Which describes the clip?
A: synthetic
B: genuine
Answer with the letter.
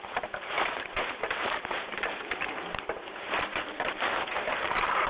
A